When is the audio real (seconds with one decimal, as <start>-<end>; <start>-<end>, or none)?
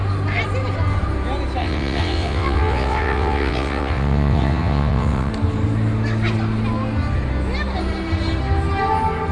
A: 0.0-1.6; 5.3-9.3